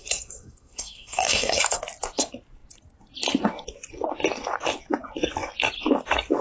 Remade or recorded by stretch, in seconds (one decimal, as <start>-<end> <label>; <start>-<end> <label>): 0.0-1.8 remade; 1.8-6.4 recorded